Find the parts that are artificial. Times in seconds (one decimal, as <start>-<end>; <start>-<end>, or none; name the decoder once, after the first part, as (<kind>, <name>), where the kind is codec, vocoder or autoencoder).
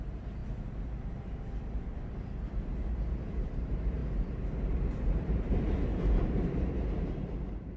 0.0-0.4 (vocoder, BigVGAN v2); 3.3-7.8